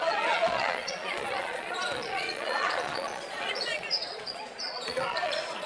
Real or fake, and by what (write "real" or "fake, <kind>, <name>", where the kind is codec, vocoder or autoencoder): fake, vocoder, Vocos